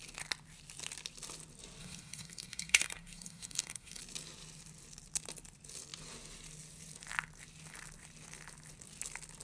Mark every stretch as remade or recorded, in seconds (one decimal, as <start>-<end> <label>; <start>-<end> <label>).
0.0-1.8 recorded; 1.8-4.0 remade; 4.0-9.4 recorded